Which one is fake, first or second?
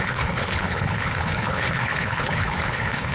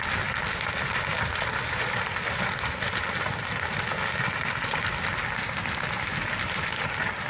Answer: first